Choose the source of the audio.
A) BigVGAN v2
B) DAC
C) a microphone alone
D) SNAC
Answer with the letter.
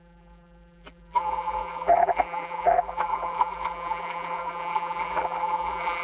A